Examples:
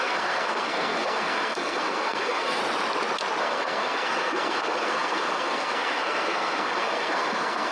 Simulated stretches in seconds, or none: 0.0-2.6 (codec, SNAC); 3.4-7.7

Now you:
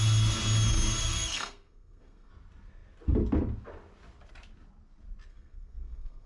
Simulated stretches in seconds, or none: 1.0-2.3 (codec, SNAC); 5.3-6.3